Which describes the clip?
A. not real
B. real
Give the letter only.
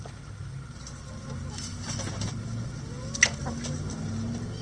B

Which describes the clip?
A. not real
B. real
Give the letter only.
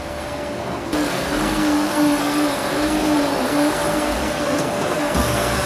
A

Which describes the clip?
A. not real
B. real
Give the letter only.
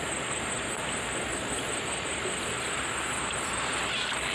B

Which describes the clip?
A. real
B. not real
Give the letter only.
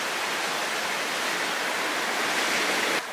A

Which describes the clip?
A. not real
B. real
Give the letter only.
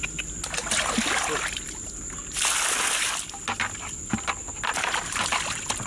B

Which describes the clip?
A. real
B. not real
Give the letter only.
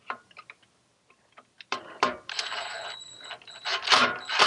B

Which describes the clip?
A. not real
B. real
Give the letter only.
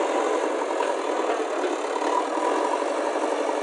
B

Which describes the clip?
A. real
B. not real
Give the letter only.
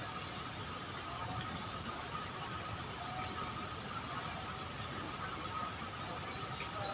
A